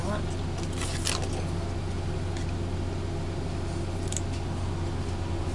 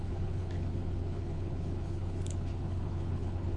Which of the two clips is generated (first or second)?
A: second